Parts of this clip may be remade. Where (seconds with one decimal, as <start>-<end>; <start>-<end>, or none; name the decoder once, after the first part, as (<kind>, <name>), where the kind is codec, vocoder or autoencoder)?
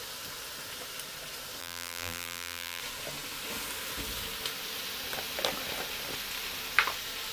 1.6-2.8 (vocoder, BigVGAN v2)